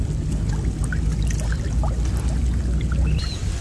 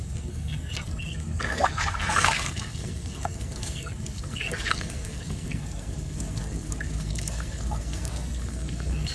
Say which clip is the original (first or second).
first